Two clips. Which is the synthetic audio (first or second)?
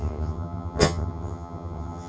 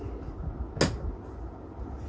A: first